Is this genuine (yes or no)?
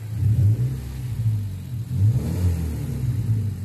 yes